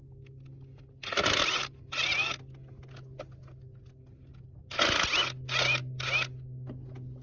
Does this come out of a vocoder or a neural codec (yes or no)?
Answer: no